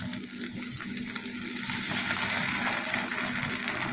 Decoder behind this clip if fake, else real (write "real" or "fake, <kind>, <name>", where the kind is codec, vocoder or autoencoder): real